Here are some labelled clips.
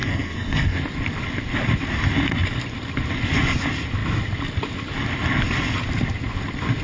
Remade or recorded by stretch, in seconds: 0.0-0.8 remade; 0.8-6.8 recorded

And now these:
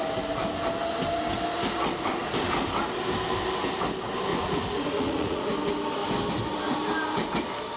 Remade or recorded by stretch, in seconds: 0.0-4.3 recorded; 4.3-5.5 remade; 5.5-7.8 recorded

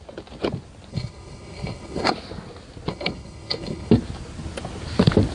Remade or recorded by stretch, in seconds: 0.0-0.9 recorded; 0.9-2.1 remade; 2.1-2.9 recorded; 2.9-3.9 remade; 3.9-5.3 recorded

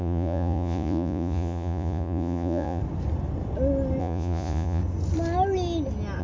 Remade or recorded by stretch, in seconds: 0.0-2.8 remade; 2.8-4.0 recorded; 4.0-4.8 remade; 4.8-6.2 recorded

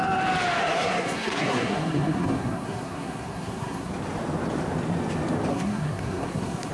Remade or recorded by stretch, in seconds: 0.0-0.6 recorded; 0.6-3.9 remade; 3.9-5.5 recorded; 5.5-6.7 remade

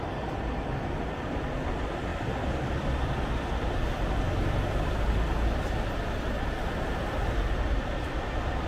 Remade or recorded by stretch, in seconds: 0.0-8.7 recorded